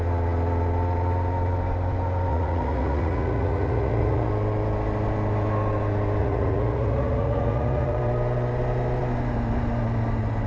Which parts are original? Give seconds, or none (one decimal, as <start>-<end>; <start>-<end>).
0.0-2.3; 4.3-6.2; 8.0-10.5